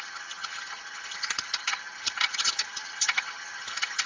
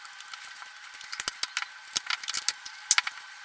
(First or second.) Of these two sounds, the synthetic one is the first